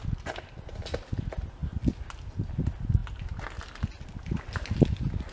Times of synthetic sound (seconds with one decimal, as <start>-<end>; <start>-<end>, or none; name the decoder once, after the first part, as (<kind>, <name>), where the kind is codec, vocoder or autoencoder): none